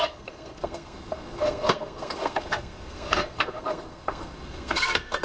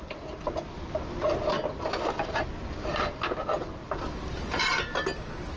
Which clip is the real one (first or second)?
second